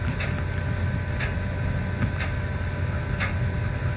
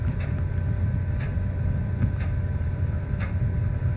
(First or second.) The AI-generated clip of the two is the second